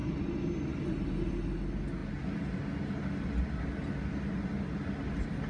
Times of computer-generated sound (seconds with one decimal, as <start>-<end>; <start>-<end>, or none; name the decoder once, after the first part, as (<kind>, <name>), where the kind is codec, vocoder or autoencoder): none